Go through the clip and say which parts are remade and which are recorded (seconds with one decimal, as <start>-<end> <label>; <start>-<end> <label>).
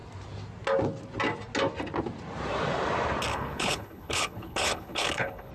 0.0-3.3 recorded; 3.3-5.5 remade